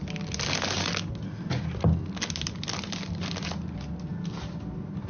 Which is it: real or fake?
real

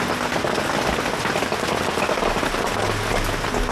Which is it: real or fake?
real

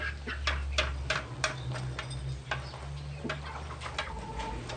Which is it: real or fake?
real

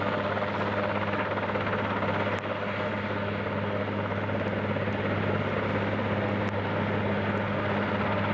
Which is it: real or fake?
real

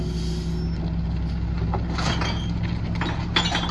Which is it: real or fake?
real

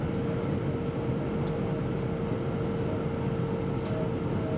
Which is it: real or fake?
real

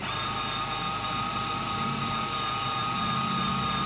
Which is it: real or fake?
real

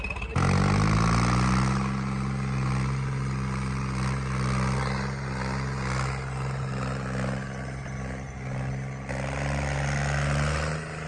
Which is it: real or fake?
real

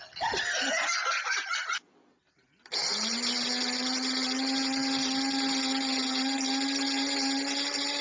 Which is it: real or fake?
real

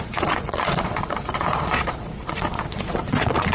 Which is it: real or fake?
fake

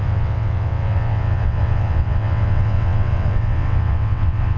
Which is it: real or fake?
fake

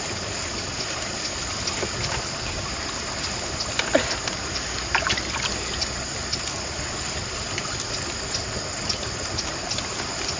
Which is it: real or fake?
real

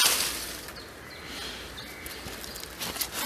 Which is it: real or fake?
real